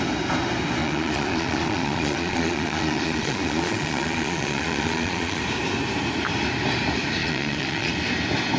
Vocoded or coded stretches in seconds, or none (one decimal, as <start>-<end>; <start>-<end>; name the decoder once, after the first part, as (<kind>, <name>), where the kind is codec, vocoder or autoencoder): 0.8-5.4 (vocoder, Vocos); 7.2-7.9